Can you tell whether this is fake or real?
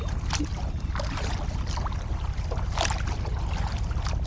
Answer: real